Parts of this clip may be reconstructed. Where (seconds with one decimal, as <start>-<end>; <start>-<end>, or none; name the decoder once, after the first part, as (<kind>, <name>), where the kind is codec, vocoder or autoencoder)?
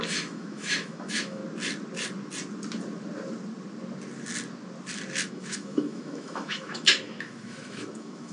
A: 0.0-1.4 (autoencoder, DAC-VAE); 5.3-8.3